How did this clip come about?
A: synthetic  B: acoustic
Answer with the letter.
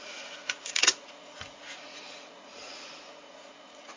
A